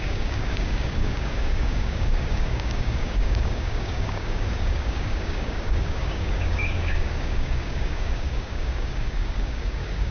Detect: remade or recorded remade